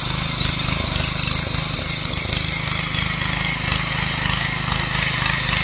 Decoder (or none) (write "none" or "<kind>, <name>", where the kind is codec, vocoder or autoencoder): none